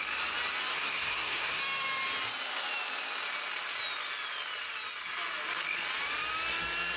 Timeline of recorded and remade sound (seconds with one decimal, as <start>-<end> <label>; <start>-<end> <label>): 0.0-0.7 recorded; 0.7-1.6 remade; 1.6-7.0 recorded

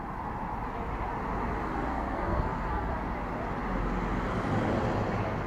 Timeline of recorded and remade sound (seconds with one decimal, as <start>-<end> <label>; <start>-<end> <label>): 0.0-1.7 recorded; 1.7-2.9 remade; 2.9-5.5 recorded

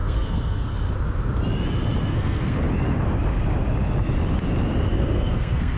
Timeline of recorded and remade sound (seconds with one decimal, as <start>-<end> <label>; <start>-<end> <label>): 0.0-0.7 remade; 0.7-2.1 recorded; 2.1-2.6 remade; 2.6-4.9 recorded; 4.9-5.8 remade

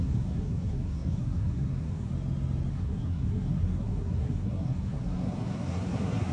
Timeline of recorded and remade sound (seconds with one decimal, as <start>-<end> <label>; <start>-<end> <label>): 0.0-2.1 remade; 2.1-2.7 recorded; 2.7-6.3 remade